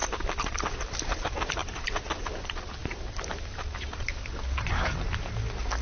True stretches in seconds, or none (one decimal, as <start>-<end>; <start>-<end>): 0.0-2.8; 4.0-5.8